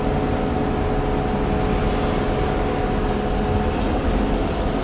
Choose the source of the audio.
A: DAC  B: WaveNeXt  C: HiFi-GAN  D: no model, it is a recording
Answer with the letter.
D